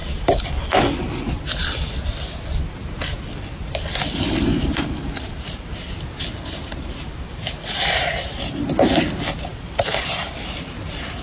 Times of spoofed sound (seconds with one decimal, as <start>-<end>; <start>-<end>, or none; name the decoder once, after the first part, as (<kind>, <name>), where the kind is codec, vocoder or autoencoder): 4.5-5.9 (vocoder, BigVGAN v2); 7.6-8.6; 9.5-10.3